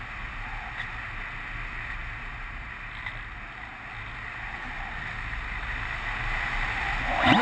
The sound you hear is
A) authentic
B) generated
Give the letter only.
A